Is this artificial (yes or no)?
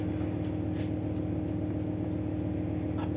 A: no